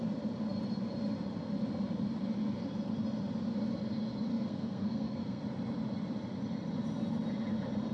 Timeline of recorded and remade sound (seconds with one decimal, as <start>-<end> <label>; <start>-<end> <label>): 0.0-4.3 recorded; 4.3-5.4 remade; 5.4-7.9 recorded